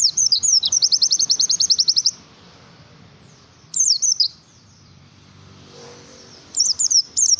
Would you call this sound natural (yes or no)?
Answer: no